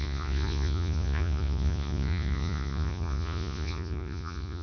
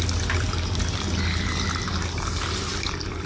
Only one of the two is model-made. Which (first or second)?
first